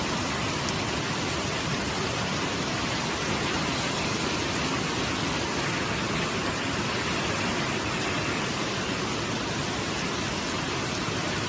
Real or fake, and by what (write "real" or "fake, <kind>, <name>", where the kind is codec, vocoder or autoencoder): real